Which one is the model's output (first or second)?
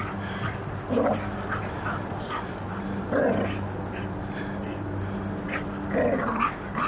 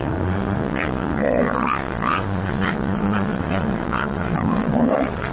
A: second